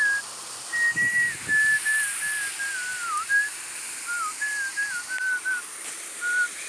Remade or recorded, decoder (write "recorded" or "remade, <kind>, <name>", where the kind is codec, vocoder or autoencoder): recorded